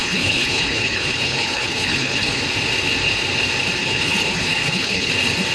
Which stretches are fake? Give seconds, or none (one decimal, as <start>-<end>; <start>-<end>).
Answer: 0.0-2.4; 3.8-5.1